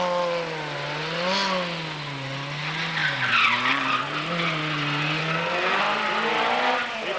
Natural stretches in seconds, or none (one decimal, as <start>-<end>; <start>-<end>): 0.0-5.2; 5.8-7.2